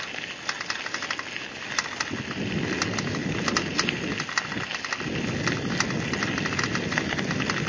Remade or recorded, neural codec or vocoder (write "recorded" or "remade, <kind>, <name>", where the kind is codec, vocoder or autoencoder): recorded